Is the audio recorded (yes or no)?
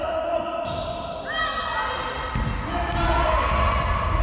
yes